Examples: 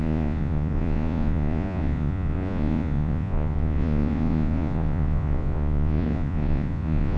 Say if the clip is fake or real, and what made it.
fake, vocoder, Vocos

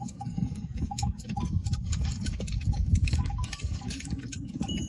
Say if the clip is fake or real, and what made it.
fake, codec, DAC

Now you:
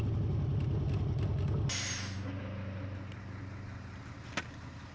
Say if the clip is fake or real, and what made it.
real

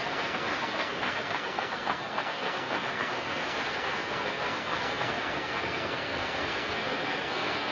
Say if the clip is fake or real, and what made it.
fake, codec, SNAC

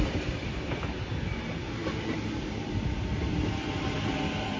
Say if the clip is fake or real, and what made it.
real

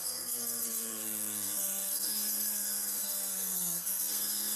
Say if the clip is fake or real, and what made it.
fake, codec, SNAC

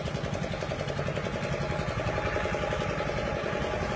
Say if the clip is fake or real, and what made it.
real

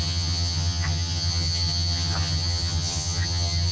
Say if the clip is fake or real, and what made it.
fake, vocoder, HiFi-GAN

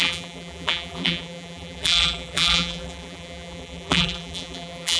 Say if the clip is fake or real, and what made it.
fake, vocoder, BigVGAN v2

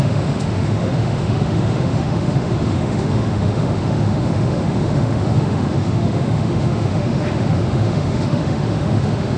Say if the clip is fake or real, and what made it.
fake, autoencoder, DAC-VAE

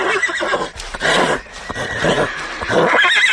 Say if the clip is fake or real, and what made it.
real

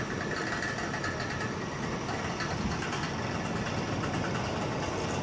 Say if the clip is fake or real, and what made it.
real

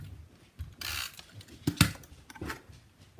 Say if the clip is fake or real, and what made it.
real